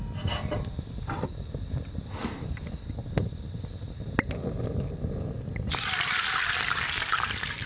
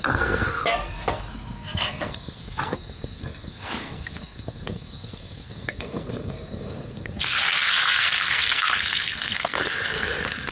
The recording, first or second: first